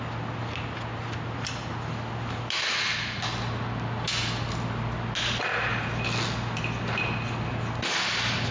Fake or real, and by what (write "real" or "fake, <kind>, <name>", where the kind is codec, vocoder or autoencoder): real